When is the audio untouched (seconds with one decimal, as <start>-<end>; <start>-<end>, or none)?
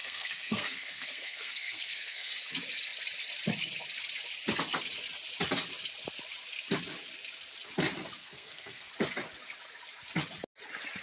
2.3-8.2; 8.9-11.0